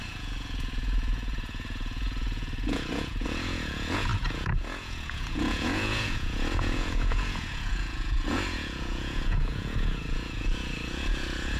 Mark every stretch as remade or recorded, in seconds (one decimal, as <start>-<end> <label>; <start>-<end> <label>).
0.0-11.6 remade